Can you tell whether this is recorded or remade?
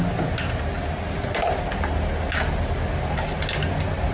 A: recorded